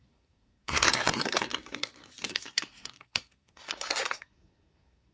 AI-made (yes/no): yes